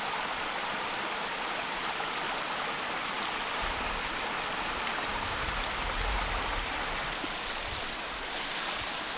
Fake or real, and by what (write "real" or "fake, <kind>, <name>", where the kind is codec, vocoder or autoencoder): fake, vocoder, BigVGAN v2